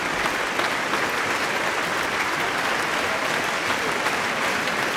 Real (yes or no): yes